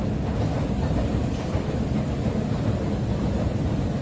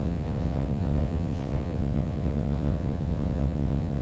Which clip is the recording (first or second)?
first